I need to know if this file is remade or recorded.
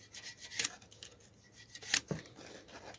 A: recorded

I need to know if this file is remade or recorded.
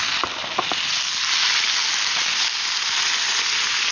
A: recorded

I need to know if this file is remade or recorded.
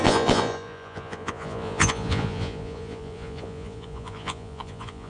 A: remade